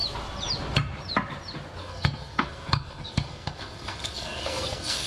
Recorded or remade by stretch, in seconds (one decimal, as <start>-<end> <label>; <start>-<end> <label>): 0.0-1.8 recorded; 1.8-5.1 remade